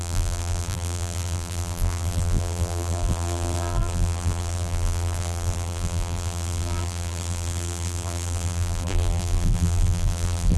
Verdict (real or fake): fake